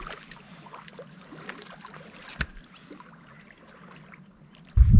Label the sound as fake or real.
real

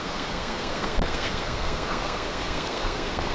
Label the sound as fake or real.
fake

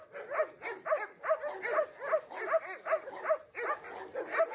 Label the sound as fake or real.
real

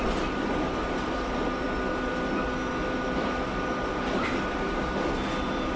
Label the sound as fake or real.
real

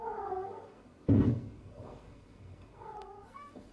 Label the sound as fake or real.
fake